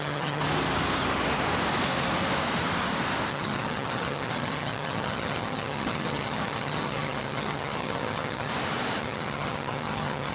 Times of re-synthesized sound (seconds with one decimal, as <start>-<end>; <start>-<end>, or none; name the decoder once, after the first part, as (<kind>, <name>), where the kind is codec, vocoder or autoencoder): 0.0-0.4 (vocoder, HiFi-GAN); 3.3-8.5; 9.0-10.3